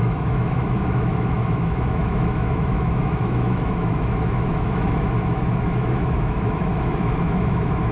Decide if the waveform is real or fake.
fake